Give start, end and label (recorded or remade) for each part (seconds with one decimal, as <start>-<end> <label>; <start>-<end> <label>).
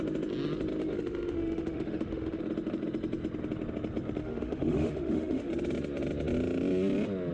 0.0-0.8 recorded; 0.8-2.4 remade; 2.4-4.2 recorded; 4.2-5.5 remade; 5.5-7.3 recorded